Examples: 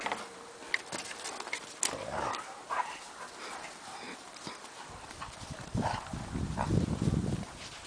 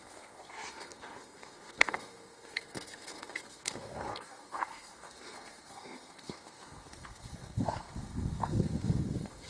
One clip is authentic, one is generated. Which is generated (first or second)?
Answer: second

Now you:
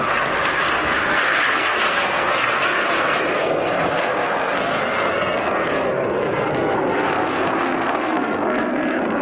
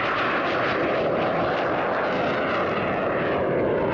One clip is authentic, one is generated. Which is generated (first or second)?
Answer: first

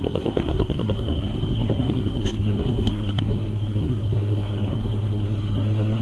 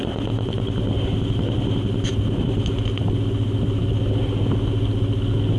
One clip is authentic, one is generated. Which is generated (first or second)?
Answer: first